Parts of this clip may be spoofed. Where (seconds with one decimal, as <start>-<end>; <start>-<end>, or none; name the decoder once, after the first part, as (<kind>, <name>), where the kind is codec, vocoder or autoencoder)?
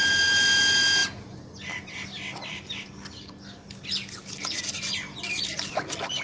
none